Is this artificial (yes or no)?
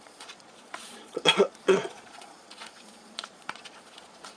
yes